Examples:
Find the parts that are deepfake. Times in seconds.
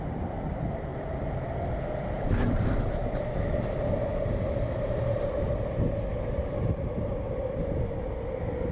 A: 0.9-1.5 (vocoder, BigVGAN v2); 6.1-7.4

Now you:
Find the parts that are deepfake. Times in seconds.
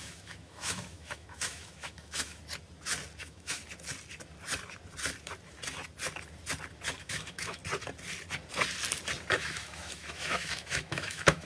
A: 0.0-2.4 (autoencoder, DAC-VAE); 3.2-3.6; 7.0-7.6; 9.3-11.5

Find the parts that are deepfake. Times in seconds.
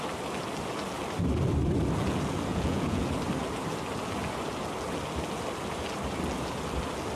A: 2.5-3.1 (vocoder, Vocos)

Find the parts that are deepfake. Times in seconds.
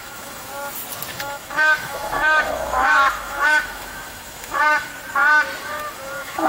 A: 0.0-0.5 (autoencoder, DAC-VAE); 1.1-4.9; 5.6-6.5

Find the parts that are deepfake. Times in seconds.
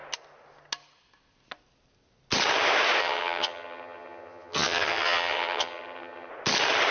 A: 3.0-6.3 (vocoder, HiFi-GAN)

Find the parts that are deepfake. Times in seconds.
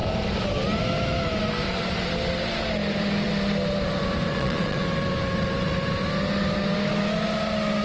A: 4.3-4.8 (vocoder, Vocos)